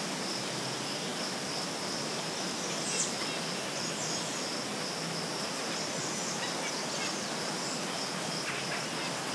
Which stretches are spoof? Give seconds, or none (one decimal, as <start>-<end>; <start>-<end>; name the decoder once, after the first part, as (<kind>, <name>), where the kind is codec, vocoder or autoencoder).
none